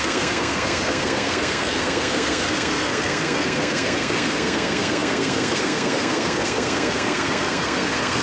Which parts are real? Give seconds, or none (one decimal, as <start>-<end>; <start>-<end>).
none